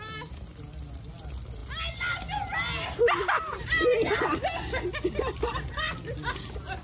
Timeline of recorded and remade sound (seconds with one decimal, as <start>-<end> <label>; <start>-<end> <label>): 0.0-6.8 recorded